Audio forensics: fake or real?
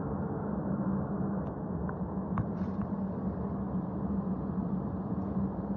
fake